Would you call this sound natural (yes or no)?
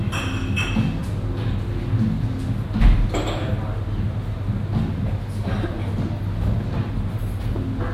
yes